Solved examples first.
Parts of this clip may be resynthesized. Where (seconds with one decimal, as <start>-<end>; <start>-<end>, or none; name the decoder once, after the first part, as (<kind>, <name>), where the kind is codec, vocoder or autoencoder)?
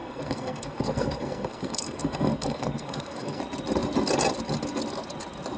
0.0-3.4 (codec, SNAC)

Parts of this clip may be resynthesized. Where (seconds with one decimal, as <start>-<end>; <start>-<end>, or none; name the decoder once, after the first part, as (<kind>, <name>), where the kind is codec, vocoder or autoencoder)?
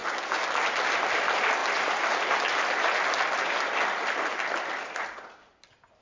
none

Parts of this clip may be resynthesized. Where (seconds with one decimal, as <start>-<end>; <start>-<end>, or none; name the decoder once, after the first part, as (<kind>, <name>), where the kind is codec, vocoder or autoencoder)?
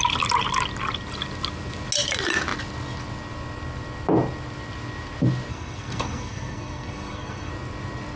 5.5-7.5 (codec, SNAC)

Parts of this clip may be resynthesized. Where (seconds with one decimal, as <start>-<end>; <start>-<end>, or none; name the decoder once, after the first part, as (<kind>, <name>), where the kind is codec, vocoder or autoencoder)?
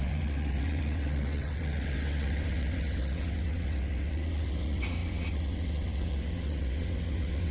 0.0-7.5 (vocoder, WaveNeXt)